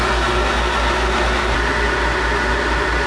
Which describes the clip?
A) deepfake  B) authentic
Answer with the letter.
B